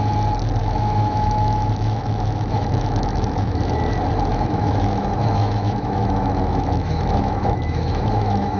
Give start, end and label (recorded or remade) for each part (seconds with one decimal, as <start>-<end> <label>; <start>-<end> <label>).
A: 0.0-0.6 recorded; 0.6-3.9 remade; 3.9-4.3 recorded; 4.3-8.6 remade